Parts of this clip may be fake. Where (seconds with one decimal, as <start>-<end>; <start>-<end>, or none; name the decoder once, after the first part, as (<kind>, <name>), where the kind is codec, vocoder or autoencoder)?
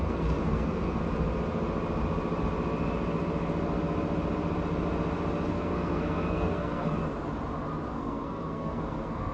0.0-1.0 (codec, SNAC); 5.5-7.0; 7.9-9.3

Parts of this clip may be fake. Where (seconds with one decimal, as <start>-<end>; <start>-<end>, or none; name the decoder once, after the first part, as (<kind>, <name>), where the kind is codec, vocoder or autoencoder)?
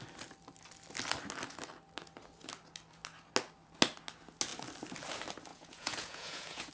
5.5-6.7 (vocoder, Vocos)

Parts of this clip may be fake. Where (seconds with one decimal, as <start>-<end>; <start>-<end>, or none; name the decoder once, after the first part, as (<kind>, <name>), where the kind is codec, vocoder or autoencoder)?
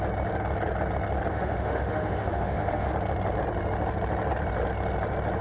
1.3-2.9 (autoencoder, DAC-VAE)